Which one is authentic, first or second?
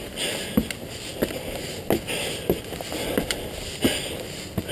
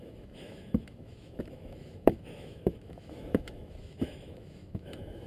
first